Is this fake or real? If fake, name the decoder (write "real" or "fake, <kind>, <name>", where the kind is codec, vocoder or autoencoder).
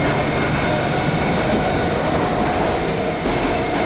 real